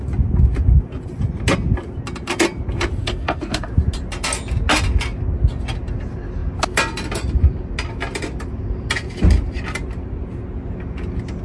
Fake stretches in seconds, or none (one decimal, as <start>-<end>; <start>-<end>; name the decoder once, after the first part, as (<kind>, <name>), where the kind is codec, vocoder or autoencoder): 3.0-3.7 (codec, SNAC)